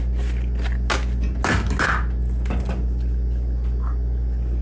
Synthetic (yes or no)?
no